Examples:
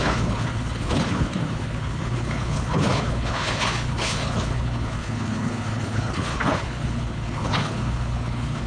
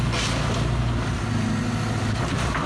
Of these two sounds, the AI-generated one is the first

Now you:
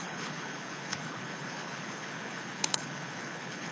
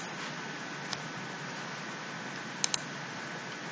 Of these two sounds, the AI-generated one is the first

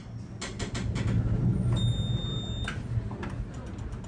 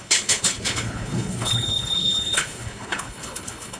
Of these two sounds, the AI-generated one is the second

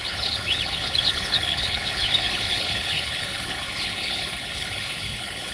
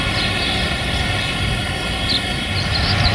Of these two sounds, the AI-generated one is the first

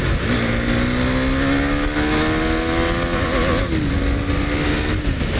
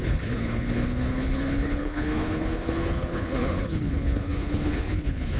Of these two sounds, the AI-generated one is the second